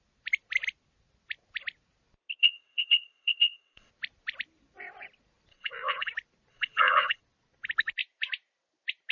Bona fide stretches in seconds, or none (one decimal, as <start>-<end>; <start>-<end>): 0.0-2.4; 3.9-5.5; 6.1-6.5; 7.2-9.1